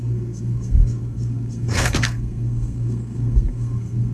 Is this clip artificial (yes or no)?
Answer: yes